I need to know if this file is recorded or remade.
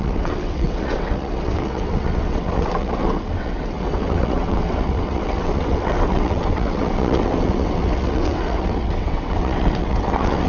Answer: remade